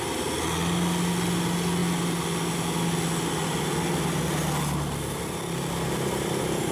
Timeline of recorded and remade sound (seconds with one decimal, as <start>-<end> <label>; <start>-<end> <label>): 0.0-6.7 recorded